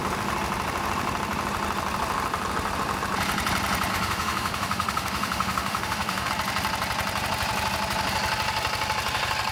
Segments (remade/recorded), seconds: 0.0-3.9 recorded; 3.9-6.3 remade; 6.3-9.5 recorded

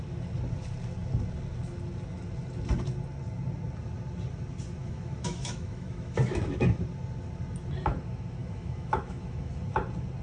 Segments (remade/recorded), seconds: 0.0-4.8 recorded; 4.8-6.8 remade; 6.8-8.4 recorded; 8.4-9.5 remade; 9.5-10.2 recorded

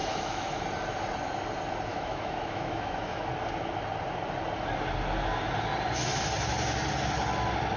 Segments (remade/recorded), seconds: 0.0-0.6 remade; 0.6-1.9 recorded; 1.9-3.3 remade; 3.3-7.8 recorded

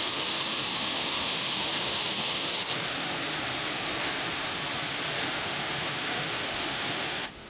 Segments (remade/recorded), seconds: 0.0-3.2 remade; 3.2-3.7 recorded; 3.7-4.6 remade; 4.6-5.2 recorded; 5.2-7.5 remade

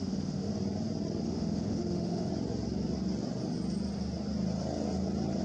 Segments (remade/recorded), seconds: 0.0-0.5 remade; 0.5-1.2 recorded; 1.2-2.3 remade; 2.3-5.4 recorded